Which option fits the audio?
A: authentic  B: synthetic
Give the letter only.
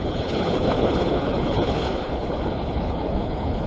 B